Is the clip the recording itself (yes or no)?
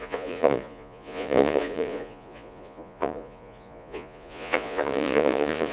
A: no